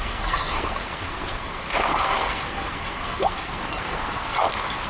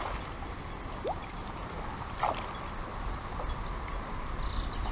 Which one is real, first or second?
second